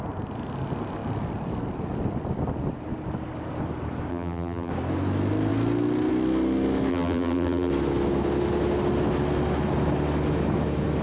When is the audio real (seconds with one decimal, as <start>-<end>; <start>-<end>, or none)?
0.0-4.1; 4.7-6.9; 7.7-11.0